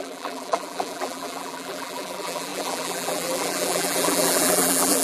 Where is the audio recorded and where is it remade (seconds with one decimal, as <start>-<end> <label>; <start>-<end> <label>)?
0.0-5.0 remade

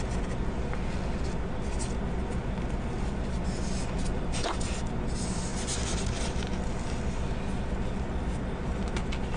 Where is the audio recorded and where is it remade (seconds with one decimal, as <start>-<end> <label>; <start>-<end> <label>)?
0.0-9.4 recorded

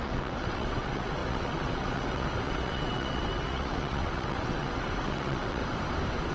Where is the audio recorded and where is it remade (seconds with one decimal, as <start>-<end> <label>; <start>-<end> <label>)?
0.0-5.6 remade; 5.6-6.3 recorded

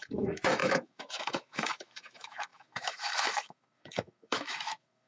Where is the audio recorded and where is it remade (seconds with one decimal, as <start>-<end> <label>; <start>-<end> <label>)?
0.0-5.1 remade

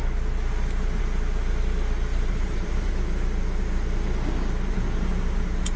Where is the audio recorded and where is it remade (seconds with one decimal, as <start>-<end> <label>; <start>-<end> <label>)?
0.0-2.1 recorded; 2.1-2.9 remade; 2.9-5.8 recorded